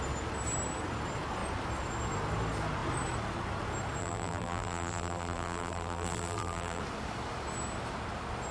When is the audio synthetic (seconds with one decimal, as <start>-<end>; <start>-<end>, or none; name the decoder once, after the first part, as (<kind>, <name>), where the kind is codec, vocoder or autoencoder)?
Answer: 4.0-6.8 (vocoder, BigVGAN v2)